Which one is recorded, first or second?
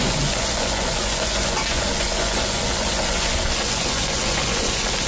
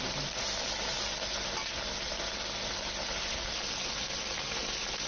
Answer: second